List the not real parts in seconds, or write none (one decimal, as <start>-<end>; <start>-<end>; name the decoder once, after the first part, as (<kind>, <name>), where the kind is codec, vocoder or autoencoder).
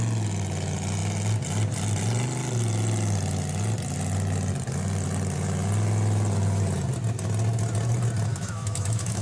8.3-9.2 (autoencoder, DAC-VAE)